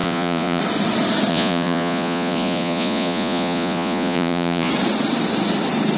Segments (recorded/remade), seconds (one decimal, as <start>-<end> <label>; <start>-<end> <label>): 0.0-0.6 remade; 0.6-1.3 recorded; 1.3-4.7 remade; 4.7-6.0 recorded